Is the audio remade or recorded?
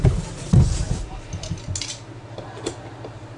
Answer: recorded